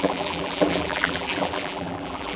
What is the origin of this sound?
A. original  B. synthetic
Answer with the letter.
B